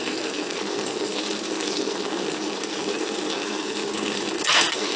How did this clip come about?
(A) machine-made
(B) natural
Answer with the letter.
A